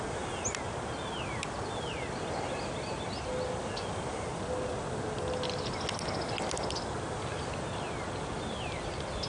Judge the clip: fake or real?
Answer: real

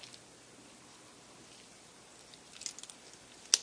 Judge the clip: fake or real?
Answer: real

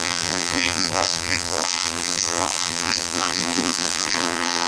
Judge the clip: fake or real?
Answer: fake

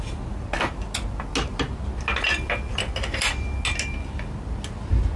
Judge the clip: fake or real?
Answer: real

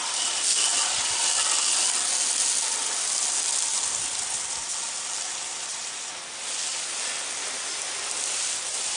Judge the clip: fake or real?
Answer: real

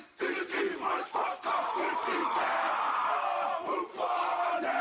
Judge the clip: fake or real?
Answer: fake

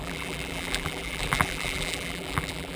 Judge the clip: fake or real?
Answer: fake